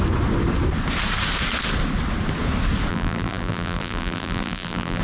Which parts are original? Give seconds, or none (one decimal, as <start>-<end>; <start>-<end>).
0.0-2.9